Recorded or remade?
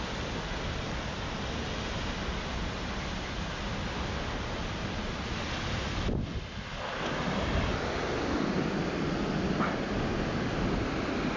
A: recorded